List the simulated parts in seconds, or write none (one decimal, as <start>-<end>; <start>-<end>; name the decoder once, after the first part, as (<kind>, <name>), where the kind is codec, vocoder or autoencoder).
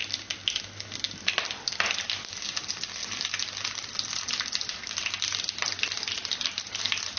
none